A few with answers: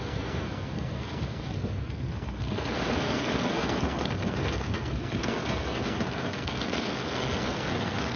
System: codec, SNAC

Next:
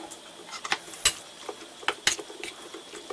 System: none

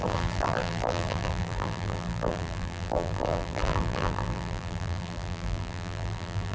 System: vocoder, BigVGAN v2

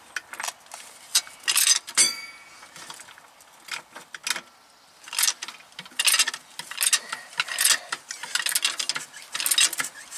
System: none